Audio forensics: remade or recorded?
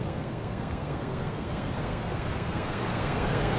remade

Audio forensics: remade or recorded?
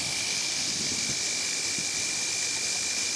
recorded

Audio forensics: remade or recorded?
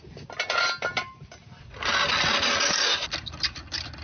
recorded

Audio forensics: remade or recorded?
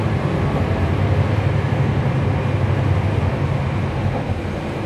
recorded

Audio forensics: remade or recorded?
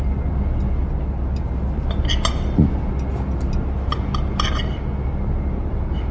recorded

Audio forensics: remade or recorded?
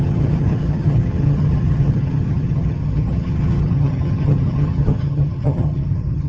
remade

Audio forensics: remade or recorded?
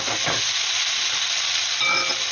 recorded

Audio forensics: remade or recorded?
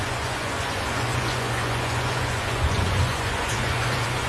remade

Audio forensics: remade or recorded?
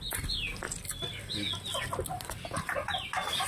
recorded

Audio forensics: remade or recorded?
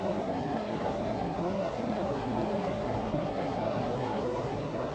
remade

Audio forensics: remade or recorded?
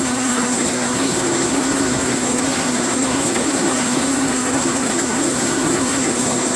remade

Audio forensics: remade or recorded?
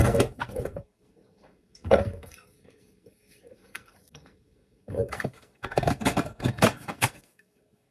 remade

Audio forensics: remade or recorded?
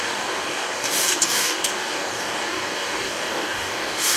remade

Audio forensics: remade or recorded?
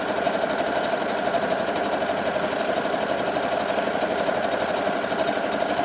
recorded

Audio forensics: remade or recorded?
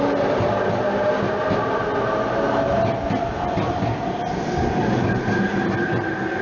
recorded